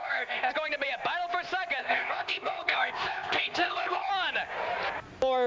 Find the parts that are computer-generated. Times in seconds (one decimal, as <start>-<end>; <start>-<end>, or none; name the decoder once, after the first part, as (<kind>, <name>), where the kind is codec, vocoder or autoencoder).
0.0-0.5 (codec, ZipCodec); 1.8-4.1